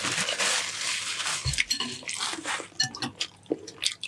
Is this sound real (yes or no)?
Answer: yes